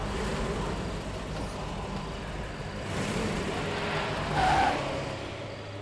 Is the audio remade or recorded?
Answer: recorded